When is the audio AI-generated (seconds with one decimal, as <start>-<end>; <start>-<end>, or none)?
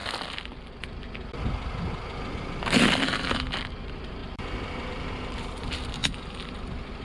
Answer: 3.7-6.0